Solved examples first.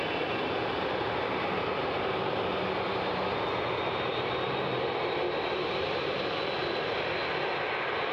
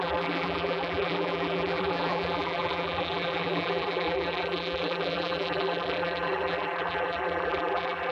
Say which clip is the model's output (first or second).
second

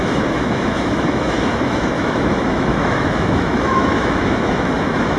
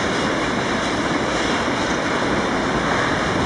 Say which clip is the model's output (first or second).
first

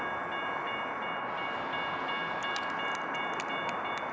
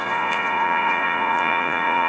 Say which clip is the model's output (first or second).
second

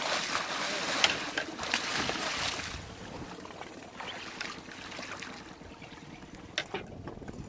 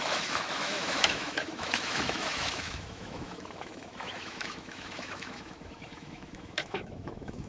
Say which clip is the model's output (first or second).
second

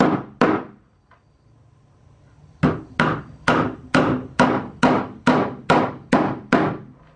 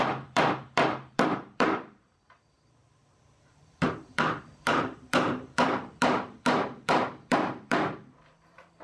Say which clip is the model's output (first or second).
second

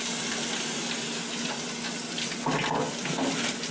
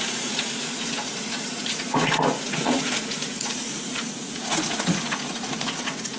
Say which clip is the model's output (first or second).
second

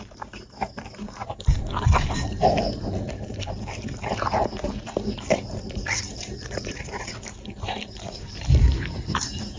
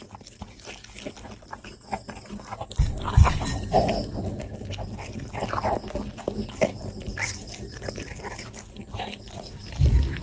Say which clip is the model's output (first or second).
first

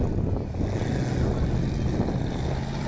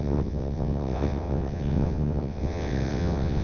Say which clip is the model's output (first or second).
second